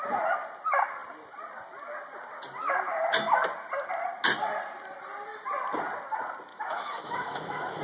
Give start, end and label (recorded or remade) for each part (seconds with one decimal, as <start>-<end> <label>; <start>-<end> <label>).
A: 0.0-6.5 recorded; 6.5-7.8 remade